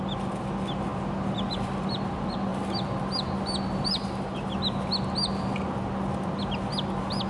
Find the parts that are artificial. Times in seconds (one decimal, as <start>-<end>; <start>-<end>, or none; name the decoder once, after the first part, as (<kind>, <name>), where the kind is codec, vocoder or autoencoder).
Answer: none